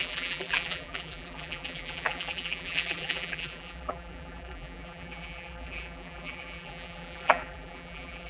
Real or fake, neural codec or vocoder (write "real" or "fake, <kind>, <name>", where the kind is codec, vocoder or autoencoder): fake, vocoder, BigVGAN v2